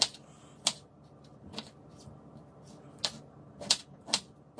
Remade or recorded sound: recorded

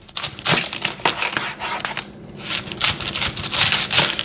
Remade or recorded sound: recorded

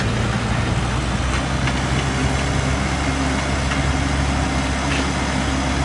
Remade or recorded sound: recorded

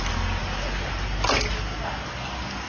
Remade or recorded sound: recorded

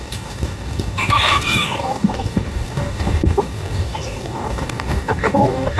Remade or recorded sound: remade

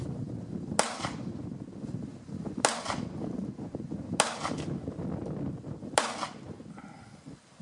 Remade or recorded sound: recorded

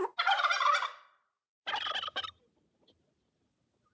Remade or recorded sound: recorded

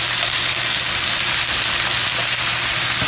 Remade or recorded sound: recorded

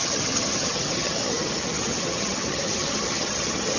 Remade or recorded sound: remade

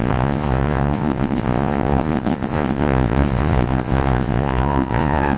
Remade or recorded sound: remade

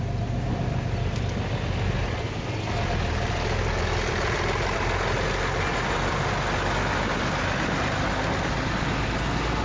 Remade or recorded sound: recorded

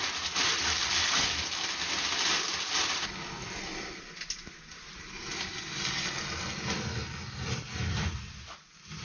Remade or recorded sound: recorded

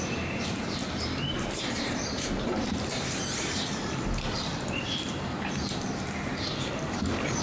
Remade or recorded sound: remade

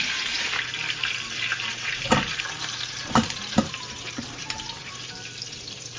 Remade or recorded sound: remade